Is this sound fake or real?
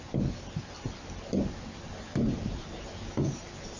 real